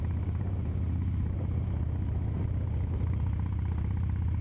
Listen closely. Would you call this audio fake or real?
fake